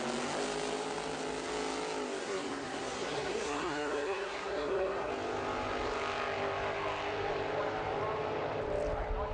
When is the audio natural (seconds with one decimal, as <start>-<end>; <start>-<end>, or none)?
0.0-2.2; 5.1-9.3